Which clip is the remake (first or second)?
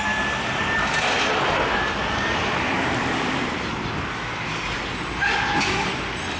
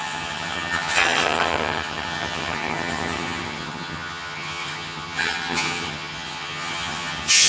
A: second